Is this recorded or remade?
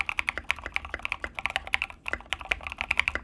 recorded